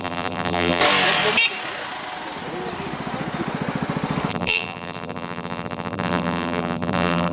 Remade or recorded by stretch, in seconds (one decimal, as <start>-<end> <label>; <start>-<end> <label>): 0.0-0.8 remade; 0.8-4.3 recorded; 4.3-7.3 remade